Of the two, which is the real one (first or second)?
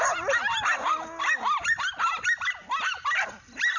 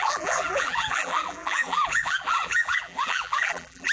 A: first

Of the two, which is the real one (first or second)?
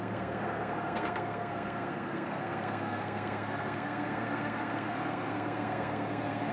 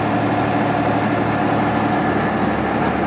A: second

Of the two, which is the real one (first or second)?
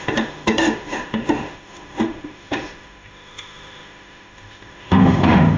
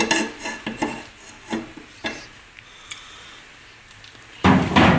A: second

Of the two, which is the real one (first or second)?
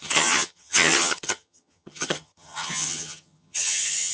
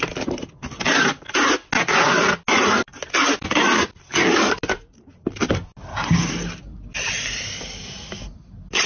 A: second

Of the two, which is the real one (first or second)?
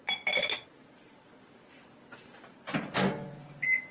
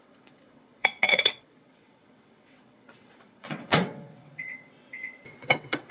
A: first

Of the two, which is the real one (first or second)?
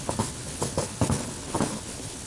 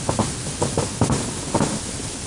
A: second